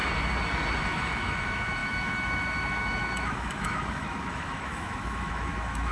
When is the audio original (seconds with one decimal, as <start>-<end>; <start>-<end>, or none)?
0.0-0.8